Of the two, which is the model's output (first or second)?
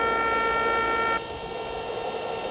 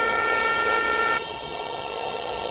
second